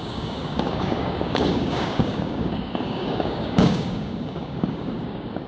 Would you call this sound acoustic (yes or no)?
no